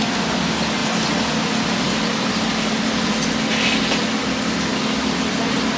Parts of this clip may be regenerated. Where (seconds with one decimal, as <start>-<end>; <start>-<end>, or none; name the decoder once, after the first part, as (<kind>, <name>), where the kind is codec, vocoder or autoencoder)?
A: none